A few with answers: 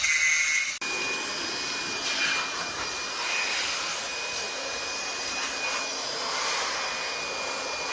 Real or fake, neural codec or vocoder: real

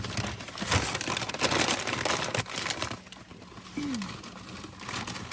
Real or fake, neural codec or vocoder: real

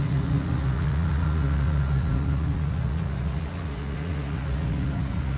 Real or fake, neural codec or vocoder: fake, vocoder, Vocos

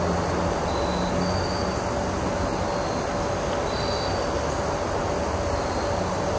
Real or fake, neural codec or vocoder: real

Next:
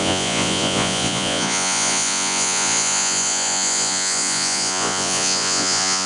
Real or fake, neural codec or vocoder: fake, vocoder, Vocos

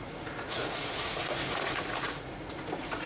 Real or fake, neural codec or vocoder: fake, vocoder, Vocos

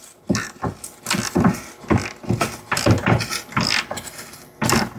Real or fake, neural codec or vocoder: real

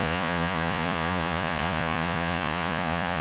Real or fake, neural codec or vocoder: fake, vocoder, Vocos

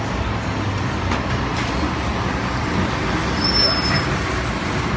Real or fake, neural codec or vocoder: real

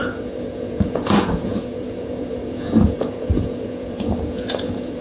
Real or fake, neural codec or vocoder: fake, vocoder, Vocos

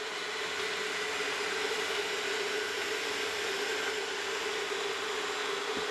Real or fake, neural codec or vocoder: real